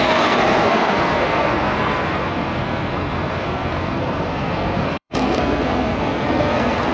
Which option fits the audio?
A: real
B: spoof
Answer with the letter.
B